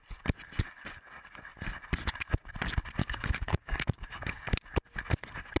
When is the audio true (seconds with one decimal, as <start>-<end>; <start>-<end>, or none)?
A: 0.0-3.0; 4.4-5.6